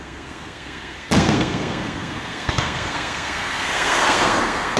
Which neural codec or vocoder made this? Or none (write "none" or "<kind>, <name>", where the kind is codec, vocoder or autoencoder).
codec, SNAC